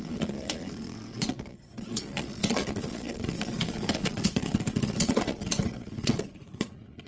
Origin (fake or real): fake